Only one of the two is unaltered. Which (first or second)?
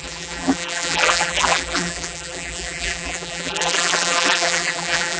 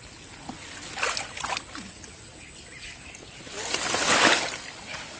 second